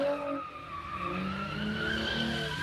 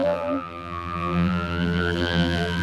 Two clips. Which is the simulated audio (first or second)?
second